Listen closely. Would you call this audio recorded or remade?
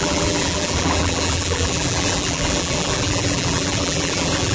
remade